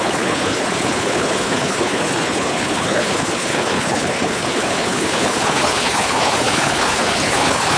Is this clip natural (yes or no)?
no